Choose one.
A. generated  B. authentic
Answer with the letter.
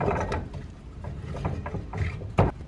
A